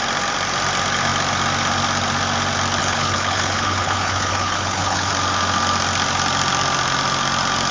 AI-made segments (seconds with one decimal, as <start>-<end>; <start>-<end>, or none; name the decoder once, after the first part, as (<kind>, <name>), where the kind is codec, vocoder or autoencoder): 2.8-5.1 (codec, HILCodec)